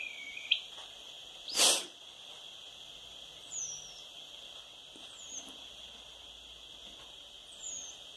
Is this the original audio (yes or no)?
yes